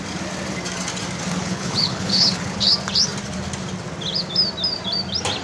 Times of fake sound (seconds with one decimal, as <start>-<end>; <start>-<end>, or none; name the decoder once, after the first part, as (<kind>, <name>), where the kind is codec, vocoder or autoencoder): 1.4-2.7 (codec, HILCodec)